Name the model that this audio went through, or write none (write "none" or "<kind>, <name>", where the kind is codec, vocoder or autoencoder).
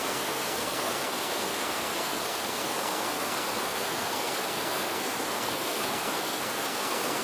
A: codec, SNAC